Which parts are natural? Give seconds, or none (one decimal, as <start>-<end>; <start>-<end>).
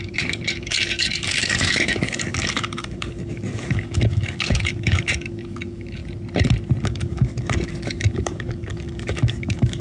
6.0-6.8